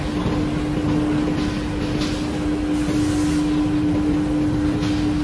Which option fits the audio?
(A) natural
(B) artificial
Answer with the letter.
A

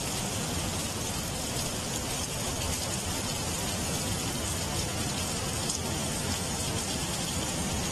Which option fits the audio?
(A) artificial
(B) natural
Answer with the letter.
B